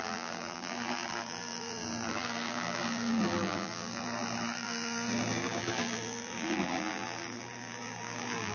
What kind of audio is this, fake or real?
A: fake